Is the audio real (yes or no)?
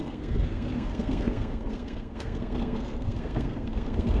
no